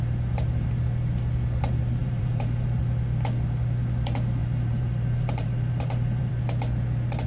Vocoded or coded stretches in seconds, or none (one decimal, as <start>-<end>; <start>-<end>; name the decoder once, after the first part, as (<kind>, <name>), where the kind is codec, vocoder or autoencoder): 2.0-2.8 (vocoder, BigVGAN v2); 4.4-6.3